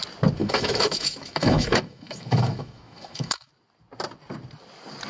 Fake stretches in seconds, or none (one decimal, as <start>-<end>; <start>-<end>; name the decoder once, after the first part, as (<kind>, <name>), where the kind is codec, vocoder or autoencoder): 0.4-3.5 (autoencoder, DAC-VAE)